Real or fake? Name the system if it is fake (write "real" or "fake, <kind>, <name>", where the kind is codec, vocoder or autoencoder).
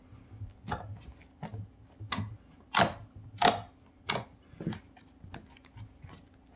real